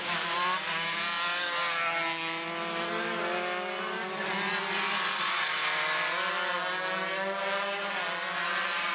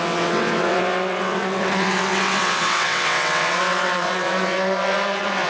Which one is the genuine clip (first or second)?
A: first